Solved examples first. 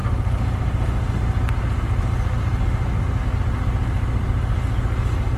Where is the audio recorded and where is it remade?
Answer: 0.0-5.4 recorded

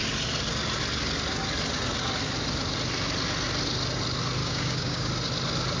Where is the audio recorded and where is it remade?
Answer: 0.0-4.4 recorded; 4.4-5.1 remade; 5.1-5.8 recorded

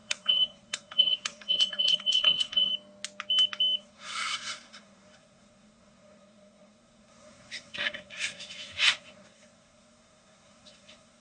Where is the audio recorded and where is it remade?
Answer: 0.0-2.7 remade; 2.7-3.8 recorded; 3.8-11.2 remade

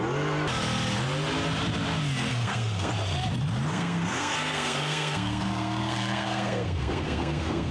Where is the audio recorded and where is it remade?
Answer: 0.0-2.3 recorded; 2.3-2.9 remade; 2.9-3.7 recorded; 3.7-7.7 remade

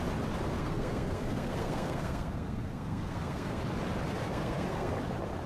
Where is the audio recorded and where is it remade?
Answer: 0.0-0.6 recorded; 0.6-3.6 remade; 3.6-4.2 recorded; 4.2-4.9 remade; 4.9-5.5 recorded

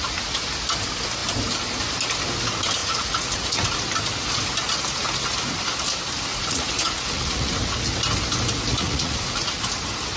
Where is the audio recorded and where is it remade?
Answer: 0.0-2.8 recorded; 2.8-3.8 remade; 3.8-6.3 recorded; 6.3-7.5 remade; 7.5-8.7 recorded; 8.7-9.6 remade; 9.6-10.2 recorded

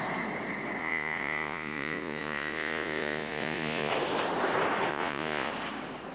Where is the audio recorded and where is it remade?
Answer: 0.0-0.8 recorded; 0.8-3.9 remade; 3.9-4.9 recorded; 4.9-5.5 remade; 5.5-6.1 recorded

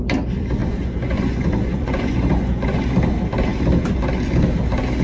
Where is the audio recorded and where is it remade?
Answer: 0.0-0.6 recorded; 0.6-2.8 remade; 2.8-5.0 recorded